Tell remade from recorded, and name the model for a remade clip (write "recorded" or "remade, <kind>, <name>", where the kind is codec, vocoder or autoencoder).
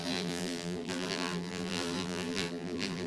remade, vocoder, BigVGAN v2